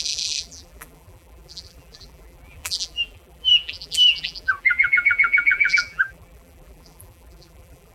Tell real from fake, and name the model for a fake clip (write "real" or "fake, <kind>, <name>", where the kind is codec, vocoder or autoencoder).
fake, vocoder, BigVGAN v2